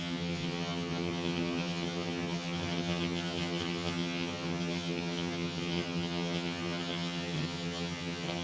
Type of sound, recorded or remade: remade